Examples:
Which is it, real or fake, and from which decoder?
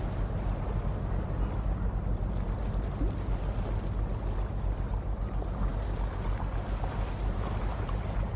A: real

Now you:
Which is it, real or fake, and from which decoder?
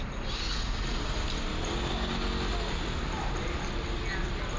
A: real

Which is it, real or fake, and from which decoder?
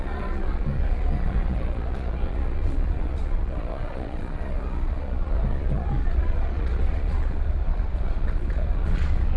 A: fake, vocoder, Vocos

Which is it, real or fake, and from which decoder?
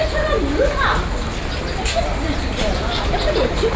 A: real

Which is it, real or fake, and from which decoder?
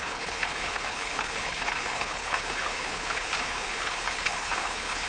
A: fake, codec, HILCodec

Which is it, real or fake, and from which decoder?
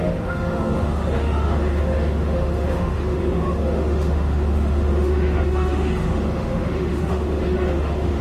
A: fake, autoencoder, DAC-VAE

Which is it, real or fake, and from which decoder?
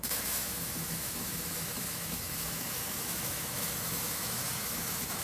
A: fake, autoencoder, DAC-VAE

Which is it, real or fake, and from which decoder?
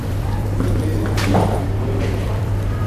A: fake, vocoder, BigVGAN v2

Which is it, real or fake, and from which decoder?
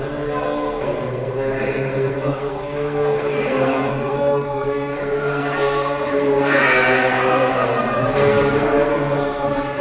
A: fake, codec, SNAC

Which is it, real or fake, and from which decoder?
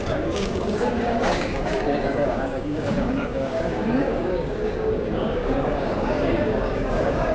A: fake, codec, DAC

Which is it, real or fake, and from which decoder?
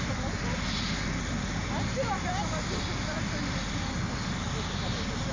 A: real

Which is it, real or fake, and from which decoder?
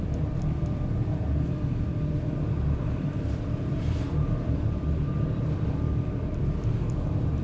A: fake, vocoder, BigVGAN v2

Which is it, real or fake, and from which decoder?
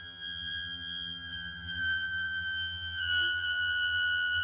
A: fake, vocoder, HiFi-GAN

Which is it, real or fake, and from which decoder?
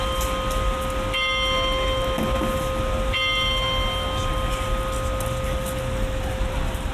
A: real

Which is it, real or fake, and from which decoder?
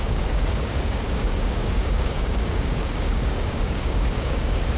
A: fake, codec, DAC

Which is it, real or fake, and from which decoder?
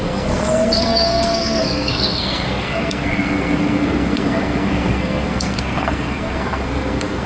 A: fake, codec, SNAC